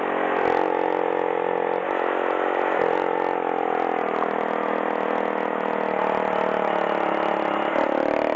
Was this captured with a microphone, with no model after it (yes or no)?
yes